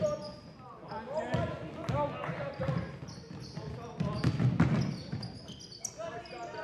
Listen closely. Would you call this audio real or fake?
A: real